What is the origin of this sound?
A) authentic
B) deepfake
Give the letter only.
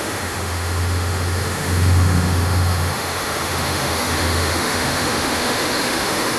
B